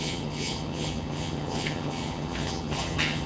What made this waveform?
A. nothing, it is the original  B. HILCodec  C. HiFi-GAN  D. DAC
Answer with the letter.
C